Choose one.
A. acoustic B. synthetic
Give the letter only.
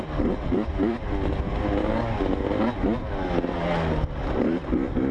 A